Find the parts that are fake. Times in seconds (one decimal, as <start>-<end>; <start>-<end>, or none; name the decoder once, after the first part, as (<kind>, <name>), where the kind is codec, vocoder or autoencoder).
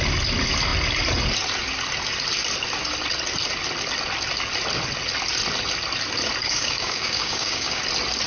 6.4-7.8 (codec, DAC)